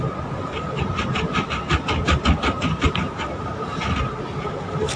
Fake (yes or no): no